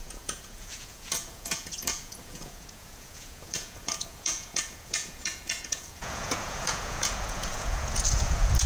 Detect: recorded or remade remade